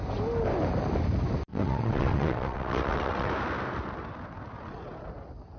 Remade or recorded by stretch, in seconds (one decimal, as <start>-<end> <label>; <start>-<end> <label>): 0.0-1.5 recorded; 1.5-3.3 remade; 3.3-5.6 recorded

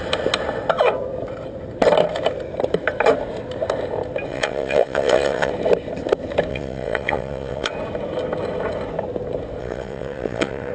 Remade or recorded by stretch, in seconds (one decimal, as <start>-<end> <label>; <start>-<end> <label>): 0.0-4.3 recorded; 4.3-5.5 remade; 5.5-6.5 recorded; 6.5-7.7 remade; 7.7-9.6 recorded; 9.6-10.7 remade